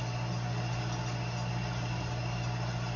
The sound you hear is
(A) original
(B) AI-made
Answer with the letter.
A